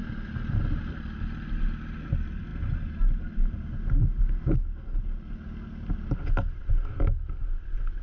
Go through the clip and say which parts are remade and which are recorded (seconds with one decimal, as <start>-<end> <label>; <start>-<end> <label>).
0.0-8.0 recorded